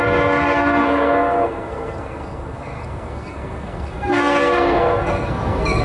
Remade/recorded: remade